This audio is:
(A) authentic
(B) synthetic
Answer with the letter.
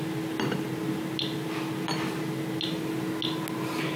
A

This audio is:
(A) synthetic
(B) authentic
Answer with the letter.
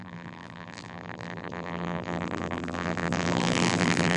A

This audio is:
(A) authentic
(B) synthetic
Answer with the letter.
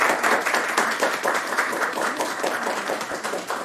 B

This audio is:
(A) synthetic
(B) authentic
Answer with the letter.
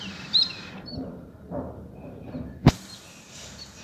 A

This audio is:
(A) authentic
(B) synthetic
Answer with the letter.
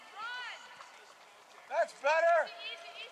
B